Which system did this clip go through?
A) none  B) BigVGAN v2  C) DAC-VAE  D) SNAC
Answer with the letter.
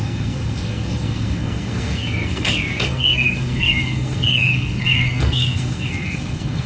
D